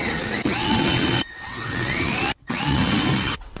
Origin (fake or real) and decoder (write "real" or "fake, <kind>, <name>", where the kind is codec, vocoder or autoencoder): fake, vocoder, WaveNeXt